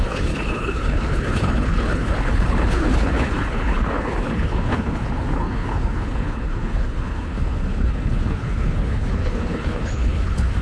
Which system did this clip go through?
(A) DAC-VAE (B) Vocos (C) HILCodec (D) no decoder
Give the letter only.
C